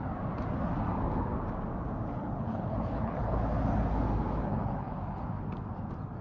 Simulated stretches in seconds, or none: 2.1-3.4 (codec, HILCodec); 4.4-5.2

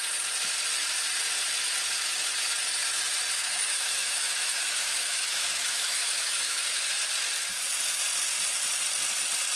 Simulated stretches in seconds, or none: 3.4-6.8 (autoencoder, DAC-VAE)

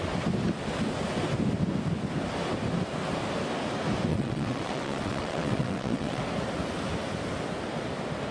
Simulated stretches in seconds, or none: 4.1-6.2 (vocoder, WaveNeXt)

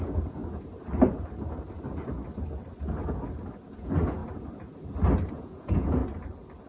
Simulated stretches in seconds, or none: 0.0-0.4 (vocoder, Vocos); 3.7-4.2; 5.3-6.0

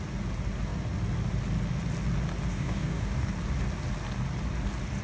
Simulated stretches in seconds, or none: 2.5-3.3 (codec, DAC)